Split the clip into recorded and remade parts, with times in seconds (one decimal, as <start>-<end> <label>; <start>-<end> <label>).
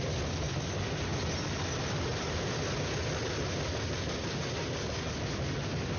0.0-6.0 recorded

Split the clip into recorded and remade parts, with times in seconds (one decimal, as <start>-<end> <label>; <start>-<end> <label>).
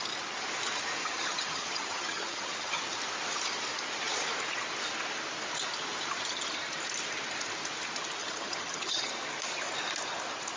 0.0-1.0 recorded; 1.0-2.8 remade; 2.8-8.2 recorded; 8.2-9.1 remade; 9.1-10.6 recorded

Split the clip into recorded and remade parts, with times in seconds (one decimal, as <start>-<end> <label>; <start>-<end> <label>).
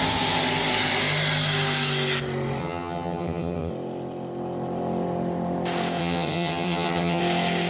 0.0-2.6 recorded; 2.6-3.7 remade; 3.7-6.0 recorded; 6.0-7.2 remade; 7.2-7.7 recorded